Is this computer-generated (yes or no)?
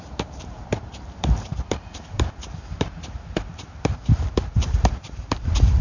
yes